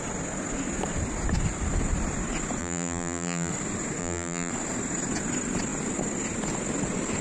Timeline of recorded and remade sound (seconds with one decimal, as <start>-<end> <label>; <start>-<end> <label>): 0.0-2.6 recorded; 2.6-3.5 remade; 3.5-4.0 recorded; 4.0-4.5 remade; 4.5-7.2 recorded